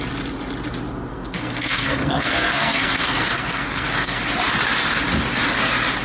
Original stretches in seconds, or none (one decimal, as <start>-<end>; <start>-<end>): 0.0-1.1; 4.2-6.0